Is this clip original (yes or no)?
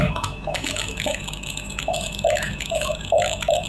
no